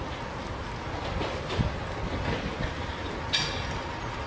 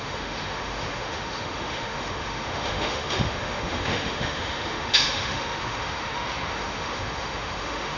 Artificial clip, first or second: second